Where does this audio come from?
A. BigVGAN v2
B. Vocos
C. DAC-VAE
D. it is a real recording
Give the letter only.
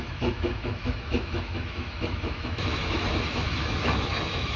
C